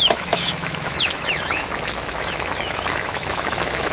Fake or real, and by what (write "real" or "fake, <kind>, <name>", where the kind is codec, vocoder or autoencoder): fake, autoencoder, DAC-VAE